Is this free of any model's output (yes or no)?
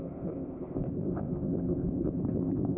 no